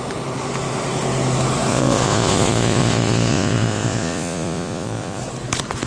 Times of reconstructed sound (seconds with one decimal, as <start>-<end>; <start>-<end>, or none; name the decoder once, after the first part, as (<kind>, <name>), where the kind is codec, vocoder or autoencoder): 1.7-5.2 (vocoder, Vocos)